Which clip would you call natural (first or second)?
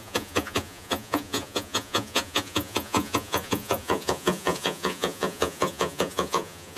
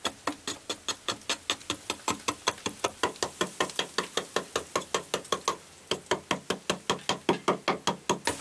second